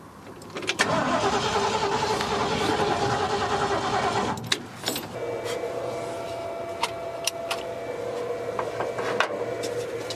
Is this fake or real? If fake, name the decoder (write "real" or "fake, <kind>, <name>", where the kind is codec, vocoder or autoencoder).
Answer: real